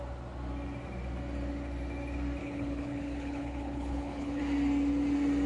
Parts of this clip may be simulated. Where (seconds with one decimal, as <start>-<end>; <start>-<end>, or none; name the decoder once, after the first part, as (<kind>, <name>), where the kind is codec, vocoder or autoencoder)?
2.4-4.4 (codec, HILCodec)